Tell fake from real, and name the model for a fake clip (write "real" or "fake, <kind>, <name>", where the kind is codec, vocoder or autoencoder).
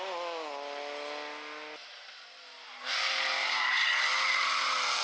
real